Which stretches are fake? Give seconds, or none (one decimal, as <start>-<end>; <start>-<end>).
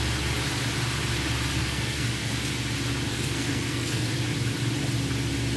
1.6-2.3; 3.1-4.1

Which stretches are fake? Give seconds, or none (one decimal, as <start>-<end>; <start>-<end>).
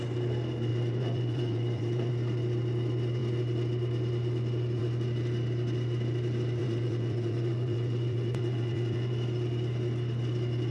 0.7-2.1; 6.6-9.1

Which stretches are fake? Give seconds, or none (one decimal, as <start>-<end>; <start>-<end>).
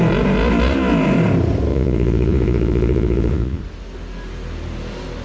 1.7-3.6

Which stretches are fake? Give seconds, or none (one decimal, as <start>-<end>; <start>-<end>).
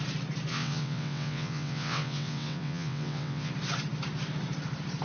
0.5-3.5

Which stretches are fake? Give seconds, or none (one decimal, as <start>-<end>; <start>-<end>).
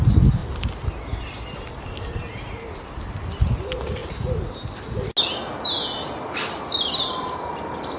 none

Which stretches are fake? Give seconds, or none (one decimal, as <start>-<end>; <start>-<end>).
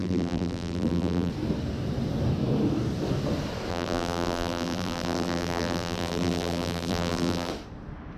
0.0-1.3; 3.7-7.5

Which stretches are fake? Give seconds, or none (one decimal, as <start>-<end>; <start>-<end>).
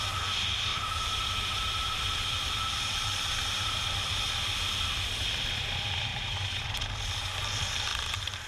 0.7-4.3; 6.1-6.6; 7.9-8.5